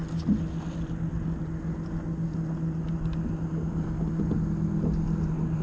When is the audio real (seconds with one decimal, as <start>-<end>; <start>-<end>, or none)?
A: 0.0-5.6